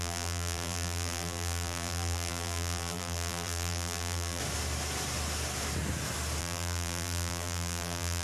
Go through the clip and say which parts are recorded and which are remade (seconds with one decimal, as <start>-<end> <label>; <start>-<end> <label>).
0.0-4.4 remade; 4.4-6.4 recorded; 6.4-8.2 remade